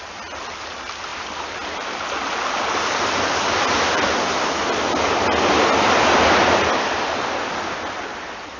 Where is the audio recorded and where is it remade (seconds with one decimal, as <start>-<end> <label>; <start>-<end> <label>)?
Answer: 0.0-8.6 recorded